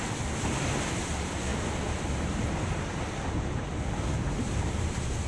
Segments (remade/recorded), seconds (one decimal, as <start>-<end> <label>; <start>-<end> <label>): 0.0-5.3 recorded